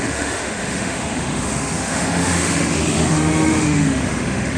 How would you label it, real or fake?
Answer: fake